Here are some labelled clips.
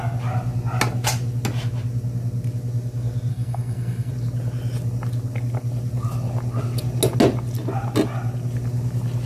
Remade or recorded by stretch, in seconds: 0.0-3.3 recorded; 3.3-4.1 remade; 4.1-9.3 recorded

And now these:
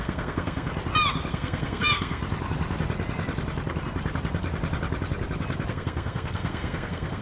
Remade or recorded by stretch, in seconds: 0.0-0.7 remade; 0.7-1.3 recorded; 1.3-2.2 remade; 2.2-5.7 recorded; 5.7-7.2 remade